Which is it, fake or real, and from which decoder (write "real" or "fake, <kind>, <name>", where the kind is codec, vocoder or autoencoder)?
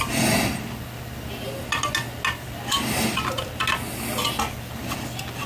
real